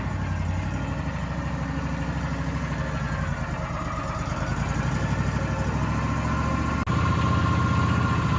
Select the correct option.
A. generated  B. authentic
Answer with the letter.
B